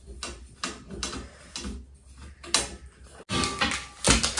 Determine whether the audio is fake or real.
real